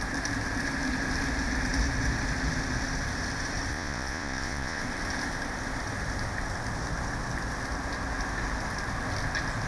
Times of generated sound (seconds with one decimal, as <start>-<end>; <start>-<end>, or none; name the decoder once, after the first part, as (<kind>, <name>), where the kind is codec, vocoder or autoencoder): 3.7-4.8 (vocoder, Vocos)